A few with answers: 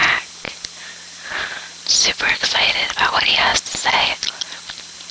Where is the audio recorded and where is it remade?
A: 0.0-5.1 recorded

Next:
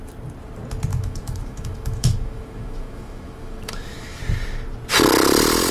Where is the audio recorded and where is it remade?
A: 0.0-0.9 recorded; 0.9-4.2 remade; 4.2-5.7 recorded

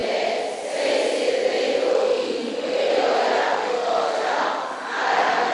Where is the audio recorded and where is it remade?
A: 0.0-1.9 recorded; 1.9-2.9 remade; 2.9-3.4 recorded; 3.4-5.5 remade

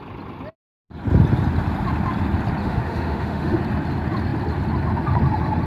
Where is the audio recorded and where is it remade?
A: 0.0-2.6 recorded; 2.6-3.6 remade; 3.6-5.7 recorded